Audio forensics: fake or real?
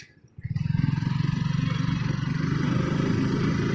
real